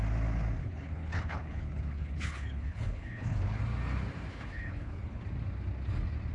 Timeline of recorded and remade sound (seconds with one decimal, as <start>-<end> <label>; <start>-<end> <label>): 0.0-0.6 recorded; 0.6-3.6 remade; 3.6-4.3 recorded; 4.3-5.2 remade; 5.2-6.3 recorded